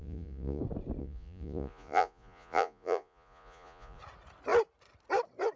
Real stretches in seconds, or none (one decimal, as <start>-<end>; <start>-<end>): 0.6-1.0; 4.0-5.6